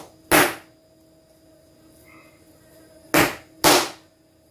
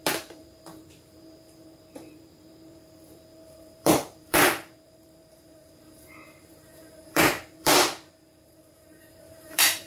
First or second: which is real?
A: first